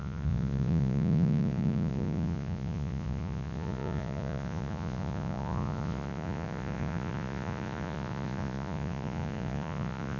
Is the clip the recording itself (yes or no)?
no